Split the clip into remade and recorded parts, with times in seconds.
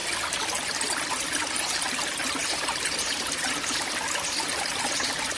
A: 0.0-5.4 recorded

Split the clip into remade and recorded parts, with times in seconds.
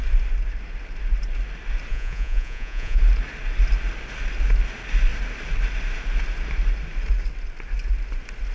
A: 0.0-1.9 recorded; 1.9-3.0 remade; 3.0-8.5 recorded